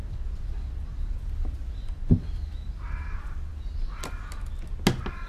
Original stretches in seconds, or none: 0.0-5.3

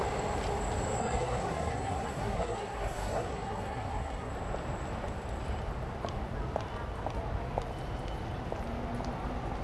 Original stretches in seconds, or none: 0.0-1.0; 4.3-9.6

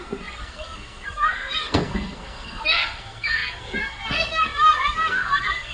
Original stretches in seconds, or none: none

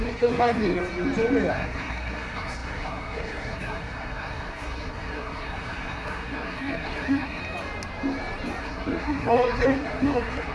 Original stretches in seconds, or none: 0.8-1.5; 7.4-8.6

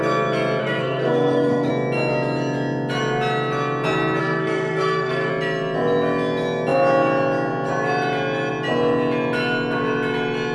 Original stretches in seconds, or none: 0.0-0.6; 1.7-4.2; 5.3-10.5